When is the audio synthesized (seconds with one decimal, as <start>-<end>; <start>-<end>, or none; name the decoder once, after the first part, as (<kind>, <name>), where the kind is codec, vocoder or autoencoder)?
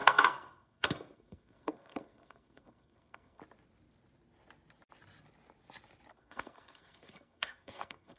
0.0-3.4 (codec, SNAC); 6.1-8.2